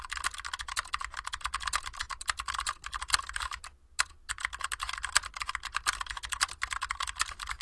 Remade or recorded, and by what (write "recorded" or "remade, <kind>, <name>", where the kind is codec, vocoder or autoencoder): recorded